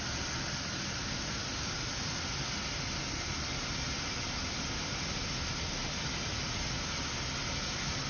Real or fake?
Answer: real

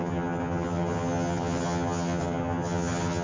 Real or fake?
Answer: fake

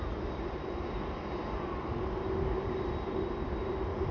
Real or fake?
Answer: real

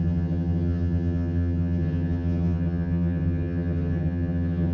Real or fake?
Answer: fake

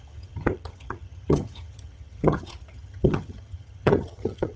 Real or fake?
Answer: fake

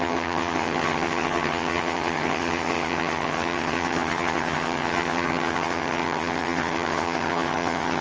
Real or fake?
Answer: fake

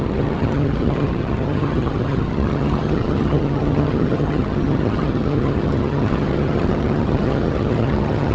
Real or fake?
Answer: fake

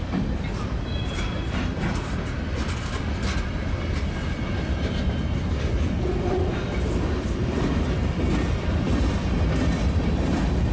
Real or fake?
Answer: real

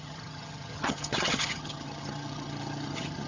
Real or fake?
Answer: fake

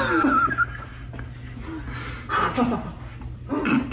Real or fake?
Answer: real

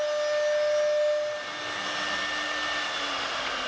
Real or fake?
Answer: real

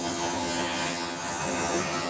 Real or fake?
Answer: fake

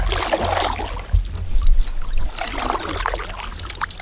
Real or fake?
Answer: real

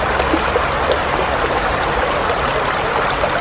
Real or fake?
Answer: real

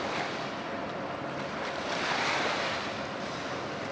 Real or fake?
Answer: real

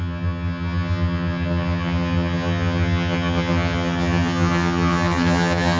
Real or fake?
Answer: fake